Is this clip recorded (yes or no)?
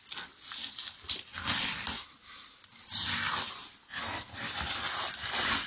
yes